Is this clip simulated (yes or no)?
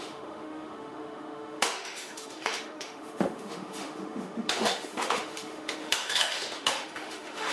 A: yes